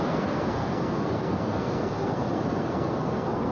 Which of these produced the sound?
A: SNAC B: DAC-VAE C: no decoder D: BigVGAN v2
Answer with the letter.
A